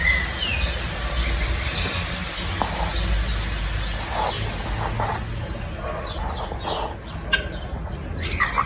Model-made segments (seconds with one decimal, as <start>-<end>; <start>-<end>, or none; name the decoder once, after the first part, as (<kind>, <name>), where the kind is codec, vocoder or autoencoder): none